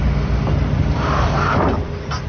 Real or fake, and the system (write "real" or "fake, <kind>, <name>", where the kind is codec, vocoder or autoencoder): fake, vocoder, BigVGAN v2